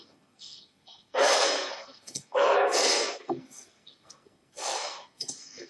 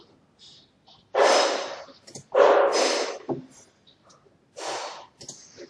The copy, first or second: first